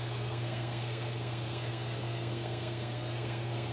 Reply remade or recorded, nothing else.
remade